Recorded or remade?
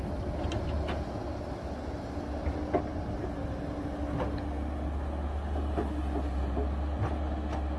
recorded